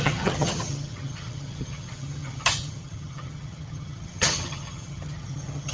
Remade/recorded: remade